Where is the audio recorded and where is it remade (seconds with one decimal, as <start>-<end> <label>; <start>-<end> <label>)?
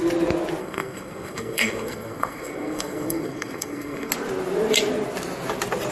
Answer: 0.0-0.6 recorded; 0.6-4.1 remade; 4.1-5.9 recorded